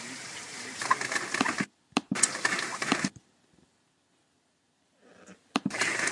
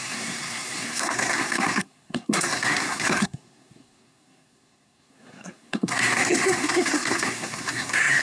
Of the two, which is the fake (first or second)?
second